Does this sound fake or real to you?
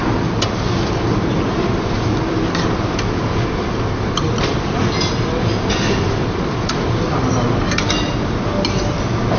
real